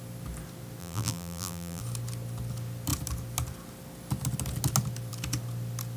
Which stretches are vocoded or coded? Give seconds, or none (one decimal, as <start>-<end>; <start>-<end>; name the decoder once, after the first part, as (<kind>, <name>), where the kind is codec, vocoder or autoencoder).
0.8-1.8 (vocoder, BigVGAN v2)